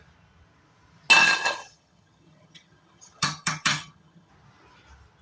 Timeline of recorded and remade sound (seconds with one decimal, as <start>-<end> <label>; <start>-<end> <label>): 0.0-1.2 recorded; 1.2-4.3 remade; 4.3-5.2 recorded

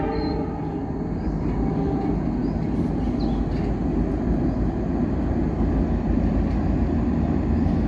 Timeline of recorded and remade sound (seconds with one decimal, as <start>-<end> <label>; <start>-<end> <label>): 0.0-2.4 remade; 2.4-7.1 recorded; 7.1-7.9 remade

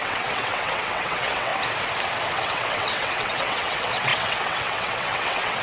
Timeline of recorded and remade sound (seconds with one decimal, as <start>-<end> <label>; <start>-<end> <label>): 0.0-1.5 remade; 1.5-2.4 recorded; 2.4-5.6 remade

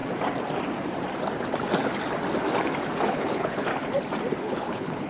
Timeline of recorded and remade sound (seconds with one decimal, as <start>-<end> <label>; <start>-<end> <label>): 0.0-3.1 recorded; 3.1-3.7 remade; 3.7-4.4 recorded; 4.4-5.1 remade

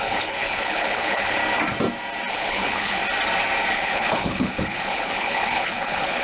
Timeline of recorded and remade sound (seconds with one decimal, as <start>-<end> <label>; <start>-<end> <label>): 0.0-1.4 remade; 1.4-2.3 recorded; 2.3-3.0 remade; 3.0-3.7 recorded; 3.7-6.2 remade